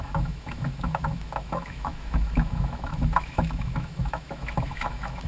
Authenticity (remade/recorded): remade